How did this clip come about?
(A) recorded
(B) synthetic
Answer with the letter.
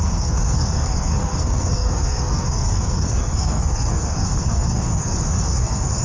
B